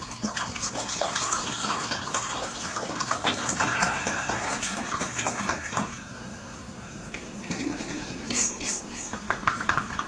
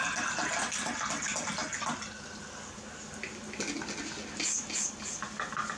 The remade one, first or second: first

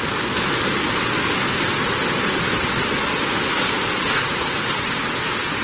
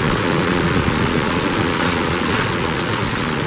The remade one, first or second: second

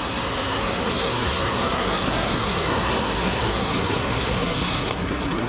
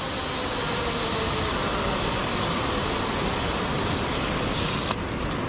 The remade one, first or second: first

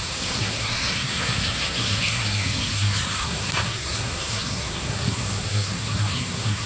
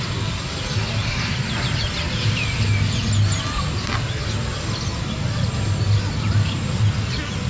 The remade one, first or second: first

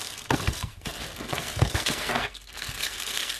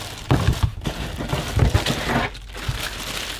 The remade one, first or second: first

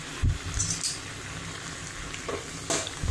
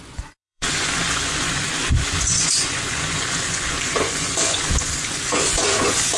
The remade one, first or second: second